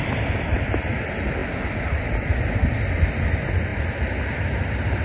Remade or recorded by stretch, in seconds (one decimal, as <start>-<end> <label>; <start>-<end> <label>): 0.0-5.0 recorded